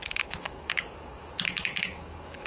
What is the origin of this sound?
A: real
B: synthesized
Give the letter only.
B